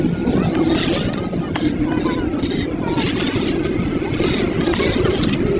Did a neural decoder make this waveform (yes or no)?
no